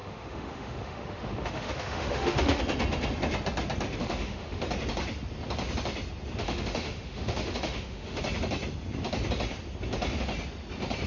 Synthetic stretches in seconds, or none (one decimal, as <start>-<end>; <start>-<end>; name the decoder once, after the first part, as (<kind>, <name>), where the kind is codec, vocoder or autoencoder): 0.0-2.6 (autoencoder, DAC-VAE); 4.0-4.6; 6.4-8.2